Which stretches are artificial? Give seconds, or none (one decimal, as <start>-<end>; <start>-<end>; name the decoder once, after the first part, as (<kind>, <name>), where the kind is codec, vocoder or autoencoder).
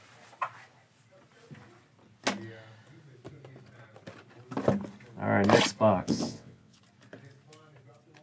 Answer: 6.0-6.8 (vocoder, WaveNeXt)